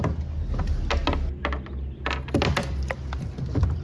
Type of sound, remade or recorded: recorded